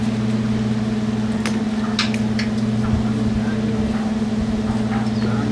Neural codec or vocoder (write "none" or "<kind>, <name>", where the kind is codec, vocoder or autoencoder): none